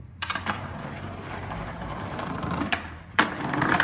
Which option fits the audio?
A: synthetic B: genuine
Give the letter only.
A